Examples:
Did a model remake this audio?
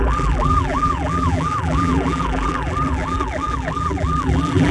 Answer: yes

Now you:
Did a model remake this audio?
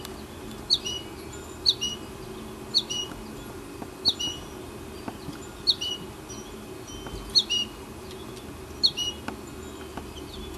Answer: no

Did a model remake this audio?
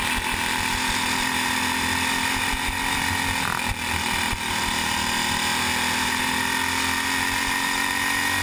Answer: no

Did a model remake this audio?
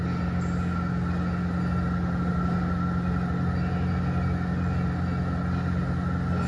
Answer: no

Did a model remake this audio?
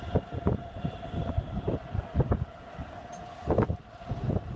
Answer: no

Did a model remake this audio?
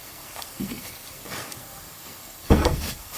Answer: yes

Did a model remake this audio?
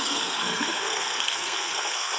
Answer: yes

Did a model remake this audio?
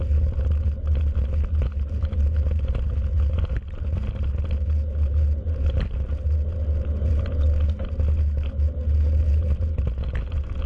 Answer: no